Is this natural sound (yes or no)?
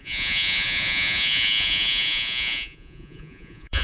no